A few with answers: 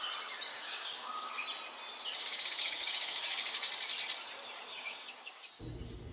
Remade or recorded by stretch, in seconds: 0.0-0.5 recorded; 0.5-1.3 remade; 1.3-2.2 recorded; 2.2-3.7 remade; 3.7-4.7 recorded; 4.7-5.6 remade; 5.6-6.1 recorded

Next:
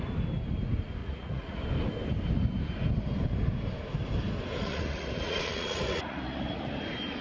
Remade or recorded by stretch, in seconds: 0.0-1.0 recorded; 1.0-1.6 remade; 1.6-4.6 recorded; 4.6-6.8 remade; 6.8-7.2 recorded

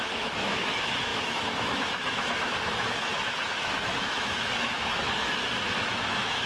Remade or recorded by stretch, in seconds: 0.0-6.5 remade

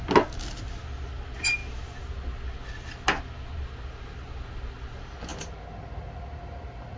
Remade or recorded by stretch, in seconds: 0.0-7.0 recorded